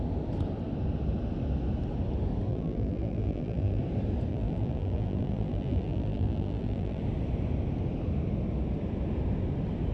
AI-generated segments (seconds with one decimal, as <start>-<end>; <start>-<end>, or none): 2.5-3.8; 4.3-7.0

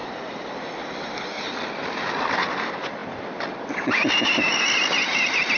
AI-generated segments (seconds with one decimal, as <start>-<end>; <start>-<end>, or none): 0.0-0.7